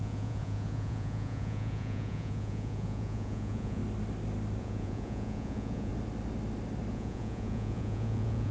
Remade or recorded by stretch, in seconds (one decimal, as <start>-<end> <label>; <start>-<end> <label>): 0.0-3.8 remade; 3.8-4.6 recorded; 4.6-5.9 remade; 5.9-6.9 recorded; 6.9-8.5 remade

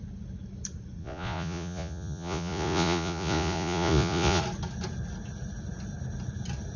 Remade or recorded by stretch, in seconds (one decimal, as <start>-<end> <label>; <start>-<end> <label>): 0.0-1.0 recorded; 1.0-4.4 remade; 4.4-6.8 recorded

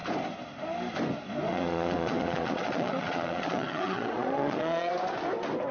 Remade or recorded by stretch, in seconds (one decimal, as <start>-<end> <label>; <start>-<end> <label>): 0.0-1.5 recorded; 1.5-4.9 remade; 4.9-5.7 recorded

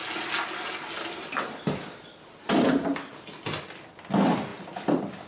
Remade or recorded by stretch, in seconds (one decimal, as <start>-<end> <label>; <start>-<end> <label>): 0.0-5.3 recorded